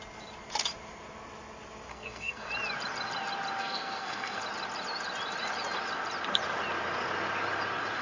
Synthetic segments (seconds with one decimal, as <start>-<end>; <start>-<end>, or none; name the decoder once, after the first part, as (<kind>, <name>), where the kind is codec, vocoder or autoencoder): 1.9-2.5 (codec, SNAC); 3.6-4.4